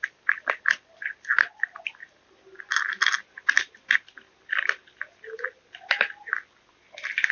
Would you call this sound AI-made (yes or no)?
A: no